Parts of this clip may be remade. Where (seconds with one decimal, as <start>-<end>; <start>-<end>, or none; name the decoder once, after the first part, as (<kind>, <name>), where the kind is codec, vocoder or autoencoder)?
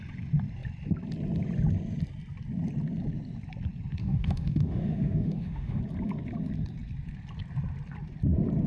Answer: 4.0-5.8 (autoencoder, DAC-VAE)